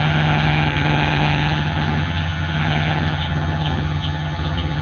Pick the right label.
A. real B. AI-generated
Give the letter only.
B